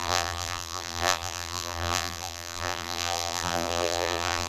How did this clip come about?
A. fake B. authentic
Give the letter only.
A